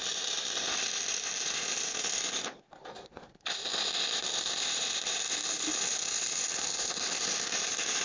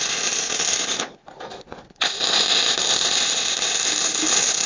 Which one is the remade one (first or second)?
first